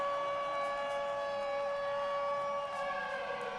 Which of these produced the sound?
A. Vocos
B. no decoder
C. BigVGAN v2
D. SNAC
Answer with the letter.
B